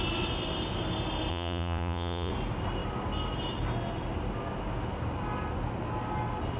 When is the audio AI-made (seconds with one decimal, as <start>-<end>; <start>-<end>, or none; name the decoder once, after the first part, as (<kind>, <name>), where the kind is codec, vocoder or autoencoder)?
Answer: 1.3-2.3 (vocoder, Vocos)